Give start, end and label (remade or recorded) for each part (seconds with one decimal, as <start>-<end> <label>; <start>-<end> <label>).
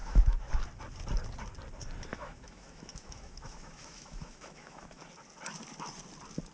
0.0-0.5 remade; 0.5-2.1 recorded; 2.1-5.0 remade; 5.0-6.5 recorded